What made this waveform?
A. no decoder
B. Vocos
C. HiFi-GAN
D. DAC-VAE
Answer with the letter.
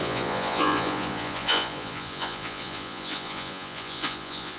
B